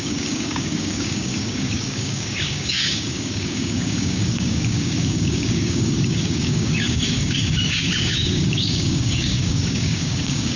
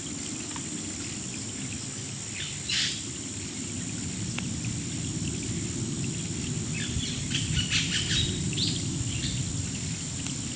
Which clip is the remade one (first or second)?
first